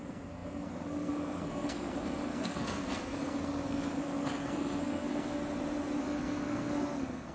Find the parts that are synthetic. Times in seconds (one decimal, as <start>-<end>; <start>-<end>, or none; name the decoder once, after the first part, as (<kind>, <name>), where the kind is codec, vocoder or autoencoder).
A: 0.0-5.4 (codec, SNAC); 6.0-7.3